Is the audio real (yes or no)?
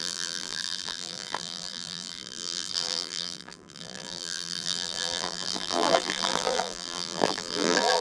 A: no